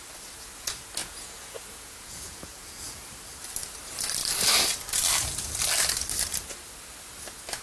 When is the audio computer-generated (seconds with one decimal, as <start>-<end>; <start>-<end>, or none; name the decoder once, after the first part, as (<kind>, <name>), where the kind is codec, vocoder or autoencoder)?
1.0-3.0 (vocoder, Vocos)